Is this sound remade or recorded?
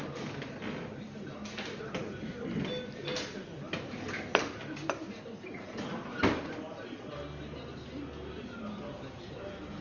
recorded